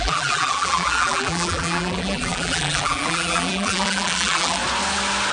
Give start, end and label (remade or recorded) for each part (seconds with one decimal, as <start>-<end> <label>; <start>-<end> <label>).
0.0-4.6 remade; 4.6-5.3 recorded